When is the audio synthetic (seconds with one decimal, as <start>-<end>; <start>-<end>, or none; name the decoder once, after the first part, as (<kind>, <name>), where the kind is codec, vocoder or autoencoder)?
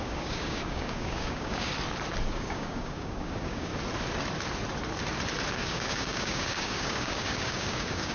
0.0-1.7 (codec, DAC); 2.3-3.7; 5.5-8.1